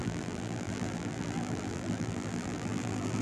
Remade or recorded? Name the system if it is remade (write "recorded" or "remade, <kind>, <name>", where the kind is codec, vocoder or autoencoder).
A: remade, vocoder, BigVGAN v2